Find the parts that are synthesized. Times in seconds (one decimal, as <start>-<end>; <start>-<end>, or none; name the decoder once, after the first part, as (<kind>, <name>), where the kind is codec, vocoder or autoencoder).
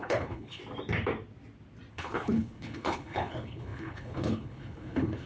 0.0-0.6 (codec, HILCodec); 1.9-5.3